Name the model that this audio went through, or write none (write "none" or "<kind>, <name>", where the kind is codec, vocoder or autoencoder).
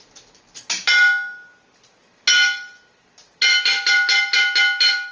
none